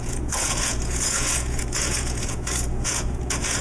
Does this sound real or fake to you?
fake